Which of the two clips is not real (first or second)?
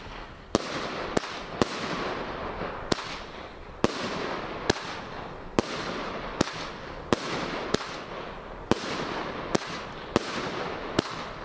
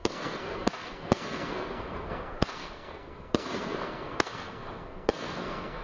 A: second